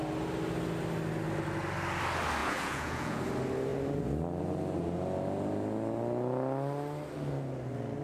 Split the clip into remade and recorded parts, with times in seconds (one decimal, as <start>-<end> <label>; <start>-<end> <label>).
0.0-2.4 recorded; 2.4-3.2 remade; 3.2-8.0 recorded